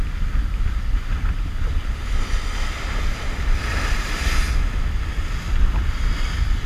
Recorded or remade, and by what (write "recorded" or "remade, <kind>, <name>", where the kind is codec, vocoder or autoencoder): recorded